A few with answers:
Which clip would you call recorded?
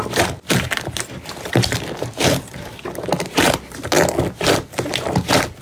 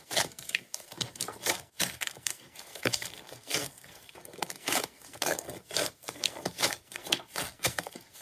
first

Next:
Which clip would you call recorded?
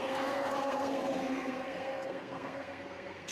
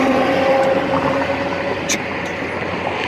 second